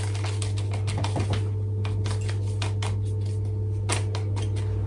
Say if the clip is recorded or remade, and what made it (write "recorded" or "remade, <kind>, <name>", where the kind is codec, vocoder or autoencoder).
recorded